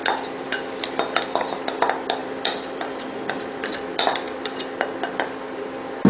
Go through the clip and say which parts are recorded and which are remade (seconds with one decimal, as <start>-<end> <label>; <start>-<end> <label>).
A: 0.0-6.1 recorded